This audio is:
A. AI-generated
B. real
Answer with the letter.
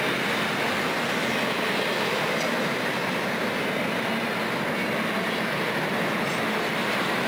B